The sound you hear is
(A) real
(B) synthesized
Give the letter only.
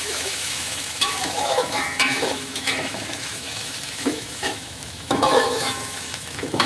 B